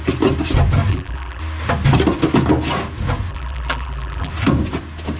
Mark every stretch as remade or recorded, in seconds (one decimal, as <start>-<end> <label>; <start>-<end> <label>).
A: 0.0-0.9 recorded; 0.9-1.4 remade; 1.4-3.3 recorded; 3.3-4.3 remade; 4.3-5.2 recorded